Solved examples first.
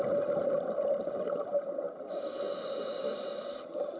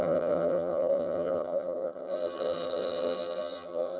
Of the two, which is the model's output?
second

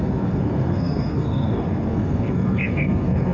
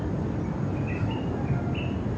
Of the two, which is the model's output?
first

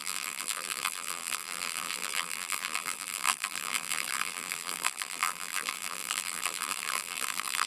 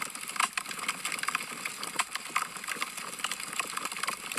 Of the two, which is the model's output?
first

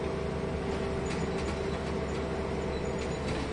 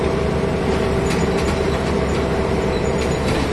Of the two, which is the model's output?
second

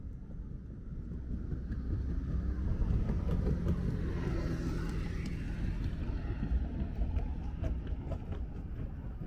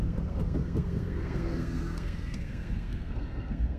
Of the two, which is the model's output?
second